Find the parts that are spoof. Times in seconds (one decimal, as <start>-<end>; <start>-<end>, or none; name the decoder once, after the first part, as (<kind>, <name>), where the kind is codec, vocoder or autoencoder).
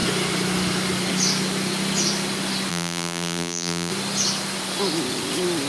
2.7-3.9 (vocoder, BigVGAN v2)